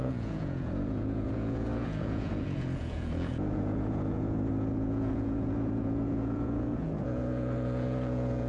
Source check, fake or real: fake